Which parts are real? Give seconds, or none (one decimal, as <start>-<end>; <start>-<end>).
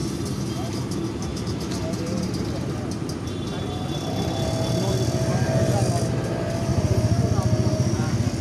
0.0-1.3; 2.8-6.7; 7.2-8.4